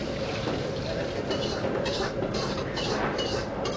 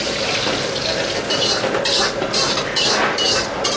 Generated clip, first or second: first